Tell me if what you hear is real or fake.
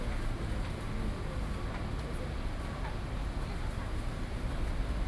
real